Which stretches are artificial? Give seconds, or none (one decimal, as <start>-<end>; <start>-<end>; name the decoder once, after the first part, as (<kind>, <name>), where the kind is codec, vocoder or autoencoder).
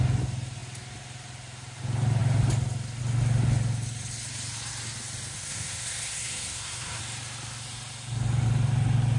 5.3-7.0 (codec, SNAC)